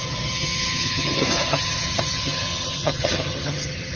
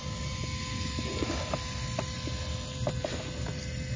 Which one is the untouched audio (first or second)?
second